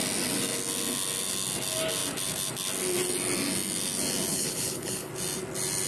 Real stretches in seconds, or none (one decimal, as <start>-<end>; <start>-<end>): 0.0-4.3; 5.1-5.9